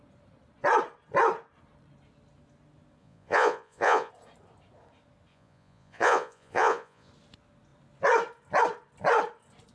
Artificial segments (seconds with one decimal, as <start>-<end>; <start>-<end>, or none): 3.0-4.1; 5.3-7.1